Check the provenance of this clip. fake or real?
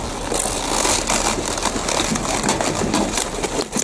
real